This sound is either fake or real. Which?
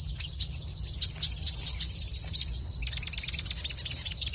real